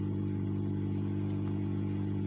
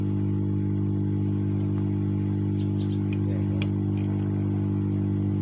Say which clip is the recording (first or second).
second